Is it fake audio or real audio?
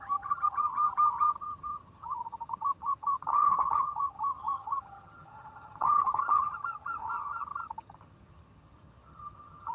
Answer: fake